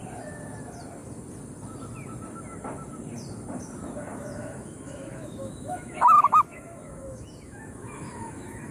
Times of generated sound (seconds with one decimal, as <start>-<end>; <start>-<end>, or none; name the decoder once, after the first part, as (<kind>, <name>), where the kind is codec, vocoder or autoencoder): 4.1-8.7 (autoencoder, DAC-VAE)